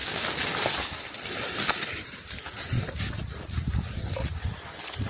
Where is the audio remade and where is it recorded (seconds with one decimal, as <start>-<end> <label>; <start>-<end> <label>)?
0.0-5.1 recorded

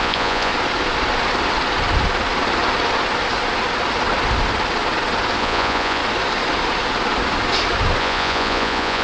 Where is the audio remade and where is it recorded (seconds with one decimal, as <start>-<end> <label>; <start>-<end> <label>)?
0.0-0.5 remade; 0.5-5.4 recorded; 5.4-6.0 remade; 6.0-8.0 recorded; 8.0-9.0 remade

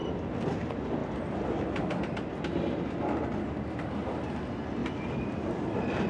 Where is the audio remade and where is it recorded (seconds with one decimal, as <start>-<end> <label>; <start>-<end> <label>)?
0.0-0.6 remade; 0.6-1.0 recorded; 1.0-3.1 remade; 3.1-4.8 recorded; 4.8-6.1 remade

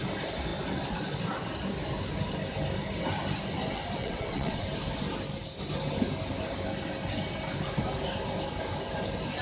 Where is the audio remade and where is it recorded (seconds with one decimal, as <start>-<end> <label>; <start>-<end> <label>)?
0.0-4.0 recorded; 4.0-4.6 remade; 4.6-9.4 recorded

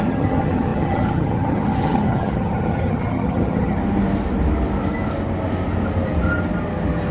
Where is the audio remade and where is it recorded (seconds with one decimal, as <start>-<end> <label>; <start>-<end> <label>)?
0.0-3.8 remade; 3.8-7.1 recorded

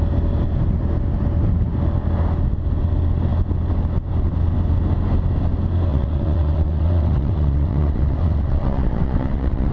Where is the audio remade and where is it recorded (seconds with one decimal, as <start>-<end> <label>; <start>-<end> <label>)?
0.0-5.9 recorded; 5.9-9.7 remade